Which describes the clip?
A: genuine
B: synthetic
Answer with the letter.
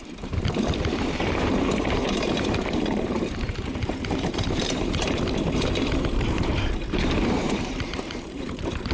B